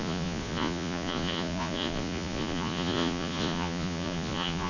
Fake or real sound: fake